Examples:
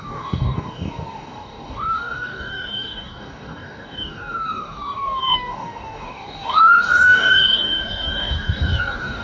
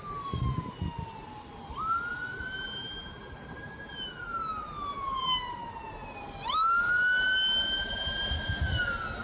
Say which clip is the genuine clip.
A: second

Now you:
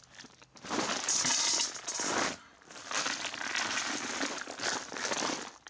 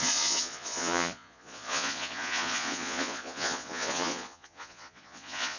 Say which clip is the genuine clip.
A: first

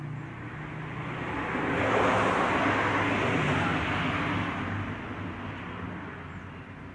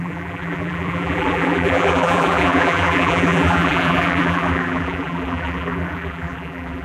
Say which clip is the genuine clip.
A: first